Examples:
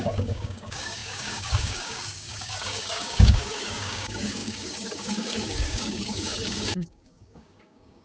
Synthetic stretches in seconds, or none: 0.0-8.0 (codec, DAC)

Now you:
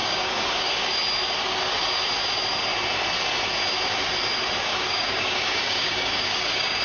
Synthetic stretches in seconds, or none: 0.0-0.7 (codec, DAC); 4.7-6.8

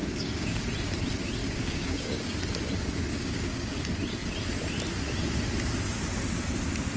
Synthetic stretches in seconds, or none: 0.0-0.6 (codec, DAC); 1.4-2.4; 3.1-3.8

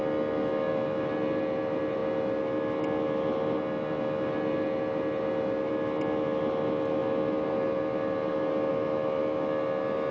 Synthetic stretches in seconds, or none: none

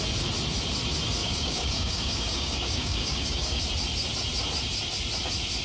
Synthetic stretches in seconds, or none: 1.2-3.6 (codec, DAC)

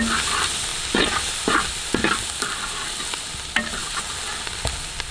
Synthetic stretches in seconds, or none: none

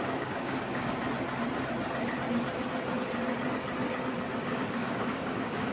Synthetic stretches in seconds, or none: 0.0-1.0 (codec, DAC); 4.4-5.7